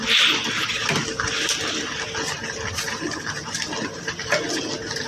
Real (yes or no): yes